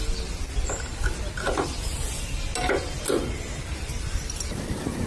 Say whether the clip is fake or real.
real